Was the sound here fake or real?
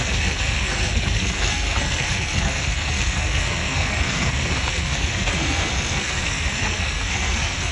fake